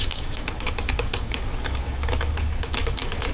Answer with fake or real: fake